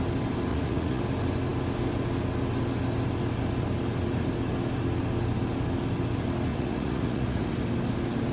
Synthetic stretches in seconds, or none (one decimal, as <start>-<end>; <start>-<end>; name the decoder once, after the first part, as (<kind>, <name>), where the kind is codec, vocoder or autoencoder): 0.5-1.0 (vocoder, Vocos); 6.5-7.5